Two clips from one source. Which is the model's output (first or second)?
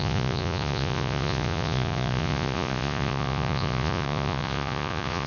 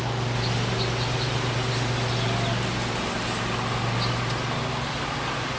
first